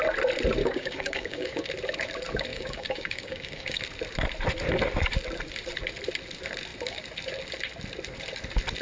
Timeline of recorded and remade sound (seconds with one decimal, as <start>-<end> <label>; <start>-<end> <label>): 0.0-0.6 recorded; 0.6-1.7 remade; 1.7-2.5 recorded; 2.5-3.8 remade; 3.8-8.8 recorded